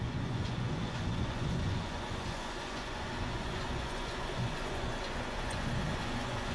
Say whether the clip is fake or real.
fake